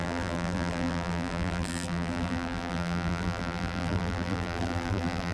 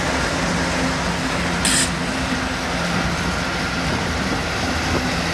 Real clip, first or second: second